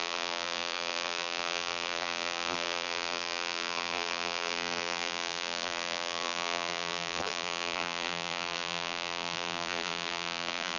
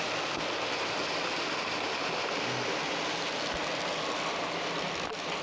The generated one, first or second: first